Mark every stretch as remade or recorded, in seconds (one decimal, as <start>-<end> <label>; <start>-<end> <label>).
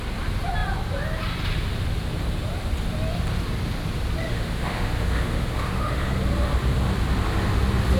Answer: 0.0-4.3 recorded; 4.3-6.1 remade; 6.1-8.0 recorded